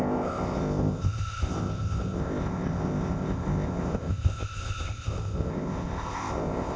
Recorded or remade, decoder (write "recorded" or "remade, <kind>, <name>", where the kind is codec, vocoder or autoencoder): remade, codec, ZipCodec